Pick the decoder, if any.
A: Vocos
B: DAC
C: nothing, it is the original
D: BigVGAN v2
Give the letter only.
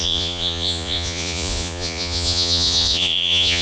A